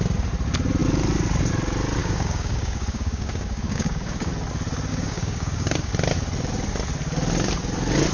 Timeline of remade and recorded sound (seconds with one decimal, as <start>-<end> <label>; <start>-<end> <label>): 0.0-2.0 recorded; 2.0-4.3 remade; 4.3-4.9 recorded; 4.9-5.9 remade; 5.9-8.1 recorded